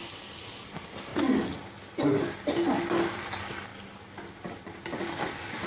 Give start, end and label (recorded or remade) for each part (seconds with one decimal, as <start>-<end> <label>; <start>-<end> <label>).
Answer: 0.0-1.1 recorded; 1.1-1.7 remade; 1.7-3.7 recorded; 3.7-5.2 remade; 5.2-5.7 recorded